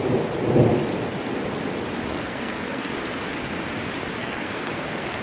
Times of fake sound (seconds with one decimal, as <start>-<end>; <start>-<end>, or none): 2.1-2.9; 4.2-5.2